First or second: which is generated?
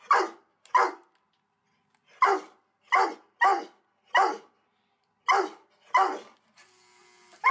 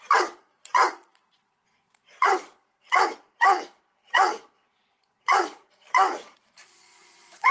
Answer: second